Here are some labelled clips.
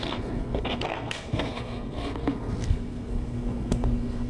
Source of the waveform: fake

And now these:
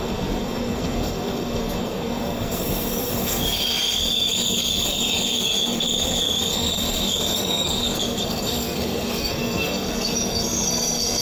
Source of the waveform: fake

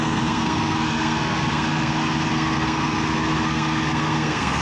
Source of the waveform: fake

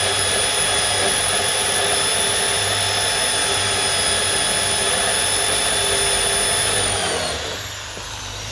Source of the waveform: real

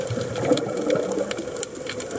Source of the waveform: real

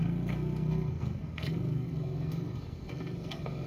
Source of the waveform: fake